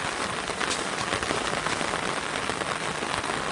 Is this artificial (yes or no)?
no